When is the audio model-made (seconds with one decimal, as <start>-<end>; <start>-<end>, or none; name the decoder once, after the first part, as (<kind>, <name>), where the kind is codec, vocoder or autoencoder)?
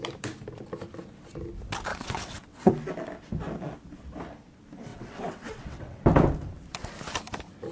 1.9-2.7 (vocoder, WaveNeXt); 4.9-6.0